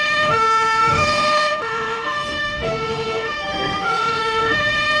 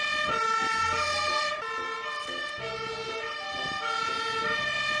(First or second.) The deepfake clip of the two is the first